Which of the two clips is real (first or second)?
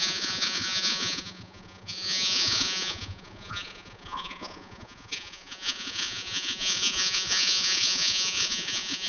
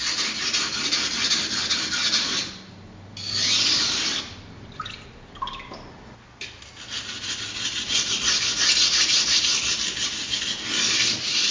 second